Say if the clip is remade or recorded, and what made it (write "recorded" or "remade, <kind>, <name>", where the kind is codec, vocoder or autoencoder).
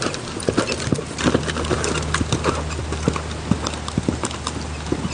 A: recorded